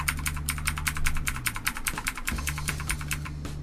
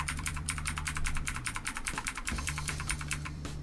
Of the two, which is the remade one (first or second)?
second